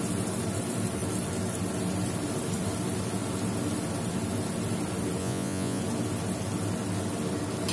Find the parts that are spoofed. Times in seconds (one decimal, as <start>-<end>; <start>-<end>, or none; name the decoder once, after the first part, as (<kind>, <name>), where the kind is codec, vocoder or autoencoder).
5.2-5.8 (vocoder, Vocos)